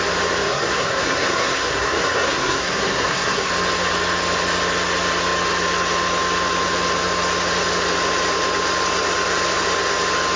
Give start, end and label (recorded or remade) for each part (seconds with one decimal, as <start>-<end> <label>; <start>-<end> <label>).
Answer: 0.0-0.4 recorded; 0.4-3.5 remade; 3.5-10.4 recorded